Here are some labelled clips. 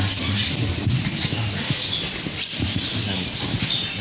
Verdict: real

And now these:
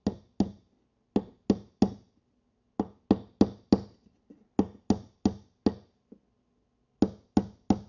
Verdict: real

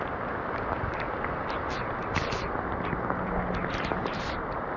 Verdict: real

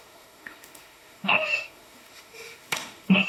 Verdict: fake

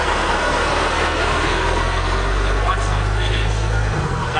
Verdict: fake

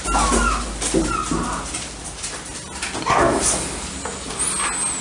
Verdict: real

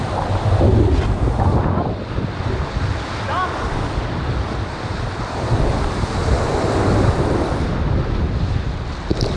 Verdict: real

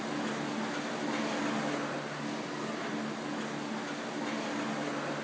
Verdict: real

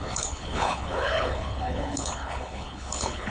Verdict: fake